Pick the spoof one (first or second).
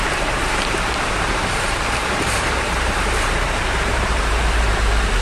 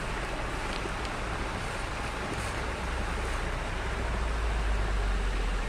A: first